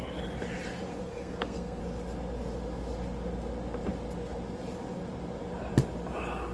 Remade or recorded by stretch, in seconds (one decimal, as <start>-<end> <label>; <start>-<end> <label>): 0.0-0.9 recorded; 0.9-1.8 remade; 1.8-6.5 recorded